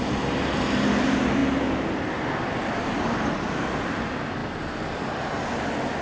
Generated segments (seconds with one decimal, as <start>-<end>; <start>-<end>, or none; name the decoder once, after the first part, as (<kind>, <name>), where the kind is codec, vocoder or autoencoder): none

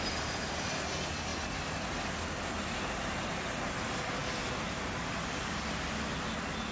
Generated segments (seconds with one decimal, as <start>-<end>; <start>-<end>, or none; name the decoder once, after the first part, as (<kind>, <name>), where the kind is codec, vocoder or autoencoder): none

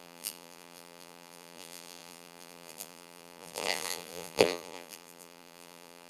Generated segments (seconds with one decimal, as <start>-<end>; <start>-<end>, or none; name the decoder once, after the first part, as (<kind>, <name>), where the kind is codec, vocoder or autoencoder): 0.0-6.1 (vocoder, BigVGAN v2)

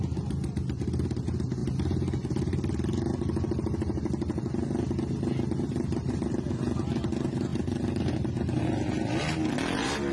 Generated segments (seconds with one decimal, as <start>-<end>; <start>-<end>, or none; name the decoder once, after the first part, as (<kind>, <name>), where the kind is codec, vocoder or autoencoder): none

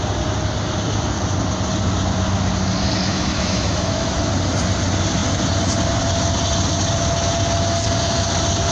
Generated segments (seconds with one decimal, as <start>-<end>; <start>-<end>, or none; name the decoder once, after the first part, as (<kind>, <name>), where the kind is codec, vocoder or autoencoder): 3.1-4.3 (autoencoder, DAC-VAE)

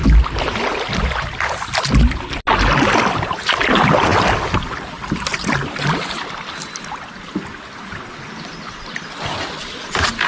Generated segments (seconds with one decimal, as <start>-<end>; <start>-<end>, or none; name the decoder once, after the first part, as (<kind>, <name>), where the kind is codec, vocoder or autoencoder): none

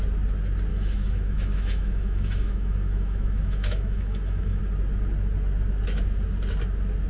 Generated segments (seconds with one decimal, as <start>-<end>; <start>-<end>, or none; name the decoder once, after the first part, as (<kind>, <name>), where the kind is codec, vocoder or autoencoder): 0.7-4.6 (autoencoder, DAC-VAE)

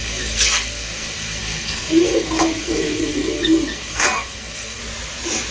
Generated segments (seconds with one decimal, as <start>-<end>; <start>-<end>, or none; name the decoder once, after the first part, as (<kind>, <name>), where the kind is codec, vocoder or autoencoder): 0.0-4.8 (codec, SNAC)